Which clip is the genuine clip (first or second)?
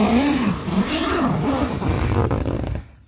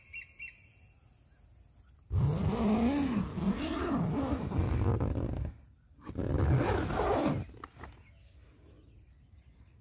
second